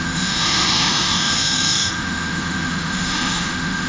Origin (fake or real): fake